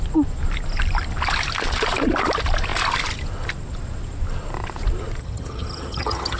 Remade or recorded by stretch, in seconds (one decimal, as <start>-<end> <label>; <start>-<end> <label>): 0.0-5.2 recorded; 5.2-6.4 remade